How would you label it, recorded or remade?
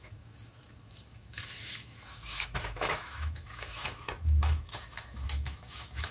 remade